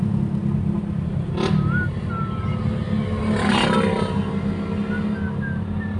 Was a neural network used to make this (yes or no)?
no